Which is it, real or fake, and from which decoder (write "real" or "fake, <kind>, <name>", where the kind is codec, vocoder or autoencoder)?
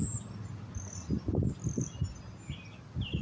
real